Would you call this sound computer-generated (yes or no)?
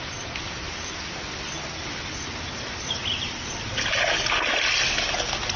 no